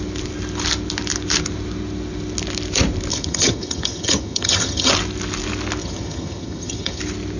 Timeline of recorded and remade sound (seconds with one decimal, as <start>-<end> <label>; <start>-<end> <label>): 0.0-3.1 recorded; 3.1-4.9 remade; 4.9-5.8 recorded; 5.8-7.0 remade; 7.0-7.4 recorded